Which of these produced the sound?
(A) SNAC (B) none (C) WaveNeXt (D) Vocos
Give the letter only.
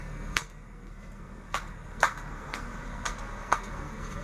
A